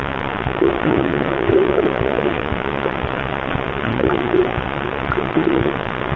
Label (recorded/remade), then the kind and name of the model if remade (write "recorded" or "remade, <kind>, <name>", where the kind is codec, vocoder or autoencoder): remade, vocoder, WaveNeXt